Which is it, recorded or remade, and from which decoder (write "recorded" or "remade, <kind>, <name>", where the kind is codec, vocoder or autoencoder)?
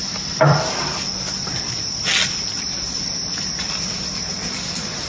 remade, vocoder, BigVGAN v2